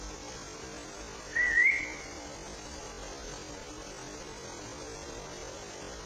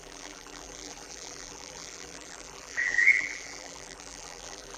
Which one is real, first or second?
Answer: first